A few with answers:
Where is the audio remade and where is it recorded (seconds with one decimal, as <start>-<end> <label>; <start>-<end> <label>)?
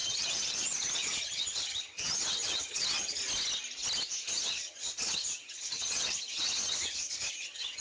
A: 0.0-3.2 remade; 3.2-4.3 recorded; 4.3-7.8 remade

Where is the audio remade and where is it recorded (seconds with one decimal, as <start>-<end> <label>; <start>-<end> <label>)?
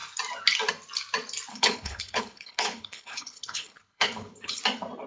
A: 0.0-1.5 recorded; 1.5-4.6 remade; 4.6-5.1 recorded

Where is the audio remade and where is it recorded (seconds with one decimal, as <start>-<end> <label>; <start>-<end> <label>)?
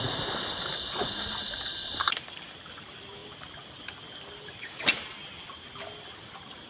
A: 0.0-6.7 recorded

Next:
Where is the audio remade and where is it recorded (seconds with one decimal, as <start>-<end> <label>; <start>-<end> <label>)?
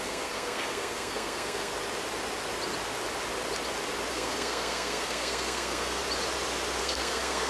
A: 0.0-1.7 remade; 1.7-4.1 recorded; 4.1-6.0 remade; 6.0-6.8 recorded; 6.8-7.5 remade